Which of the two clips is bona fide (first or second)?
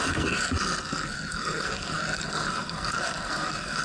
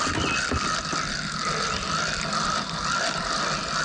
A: second